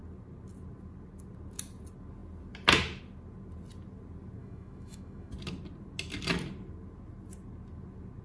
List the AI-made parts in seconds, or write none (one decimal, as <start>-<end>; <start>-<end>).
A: 4.4-5.3